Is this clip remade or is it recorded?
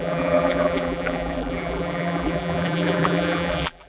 remade